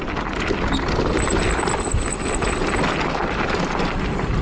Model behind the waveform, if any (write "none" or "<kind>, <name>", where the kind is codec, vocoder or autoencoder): none